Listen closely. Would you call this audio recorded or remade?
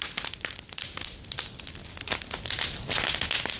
recorded